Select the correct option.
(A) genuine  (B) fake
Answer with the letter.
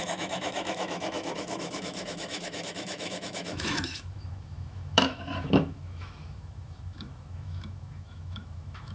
B